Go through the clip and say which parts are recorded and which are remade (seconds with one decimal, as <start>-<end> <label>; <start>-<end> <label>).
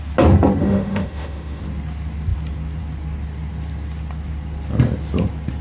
0.0-0.6 recorded; 0.6-1.6 remade; 1.6-5.6 recorded